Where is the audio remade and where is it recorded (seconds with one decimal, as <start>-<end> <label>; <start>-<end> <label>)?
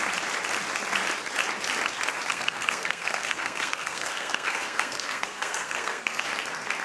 0.0-2.3 recorded; 2.3-6.2 remade; 6.2-6.8 recorded